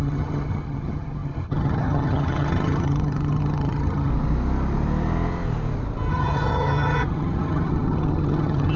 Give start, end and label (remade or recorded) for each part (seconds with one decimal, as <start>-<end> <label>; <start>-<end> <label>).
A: 0.0-4.1 remade; 4.1-6.1 recorded; 6.1-8.8 remade